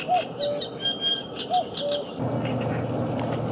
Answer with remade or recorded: recorded